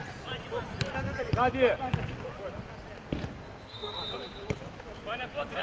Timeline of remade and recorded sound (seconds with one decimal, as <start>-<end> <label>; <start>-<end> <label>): 0.0-3.4 recorded; 3.4-4.0 remade; 4.0-5.6 recorded

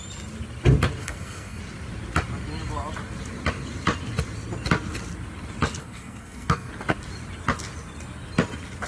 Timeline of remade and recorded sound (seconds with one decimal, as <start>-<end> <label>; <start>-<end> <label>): 0.0-1.0 recorded; 1.0-1.6 remade; 1.6-5.8 recorded; 5.8-6.7 remade; 6.7-8.9 recorded

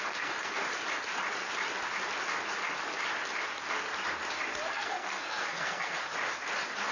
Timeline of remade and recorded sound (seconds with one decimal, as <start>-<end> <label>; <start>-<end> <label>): 0.0-0.6 remade; 0.6-4.7 recorded; 4.7-6.0 remade; 6.0-6.9 recorded